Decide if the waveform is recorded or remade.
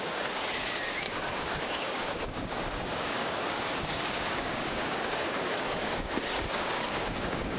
remade